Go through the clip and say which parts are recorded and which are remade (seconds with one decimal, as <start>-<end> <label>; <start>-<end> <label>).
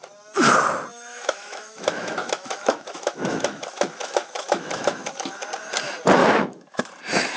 0.0-0.9 recorded; 0.9-5.3 remade; 5.3-6.2 recorded; 6.2-6.8 remade; 6.8-7.4 recorded